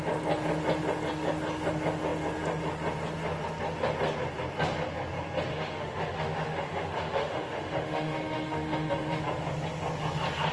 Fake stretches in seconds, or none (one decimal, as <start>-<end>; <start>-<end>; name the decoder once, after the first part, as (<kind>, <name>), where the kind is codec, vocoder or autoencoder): 5.5-9.2 (autoencoder, DAC-VAE)